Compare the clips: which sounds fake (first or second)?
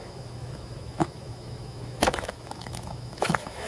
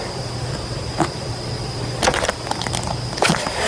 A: first